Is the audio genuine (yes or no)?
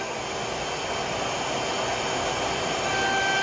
yes